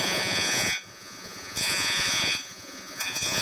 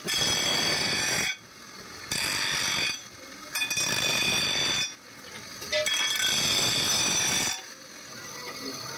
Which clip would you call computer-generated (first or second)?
first